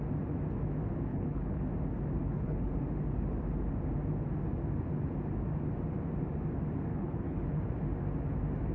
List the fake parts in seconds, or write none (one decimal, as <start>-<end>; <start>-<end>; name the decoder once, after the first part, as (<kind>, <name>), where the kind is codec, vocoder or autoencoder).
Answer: 1.1-1.6 (codec, HILCodec); 2.2-2.8; 6.9-7.6